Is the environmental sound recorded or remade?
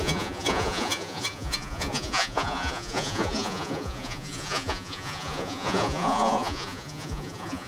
remade